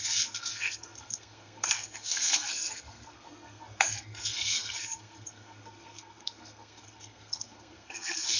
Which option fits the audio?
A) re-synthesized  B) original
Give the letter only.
A